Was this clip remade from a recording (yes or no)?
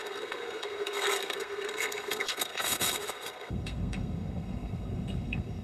yes